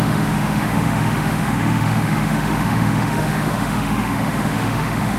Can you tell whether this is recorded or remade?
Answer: remade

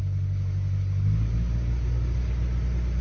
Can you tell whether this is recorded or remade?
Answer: recorded